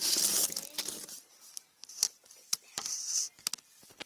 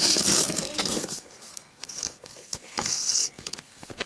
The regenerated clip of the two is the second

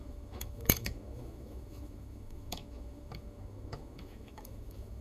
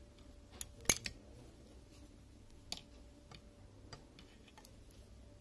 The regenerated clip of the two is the first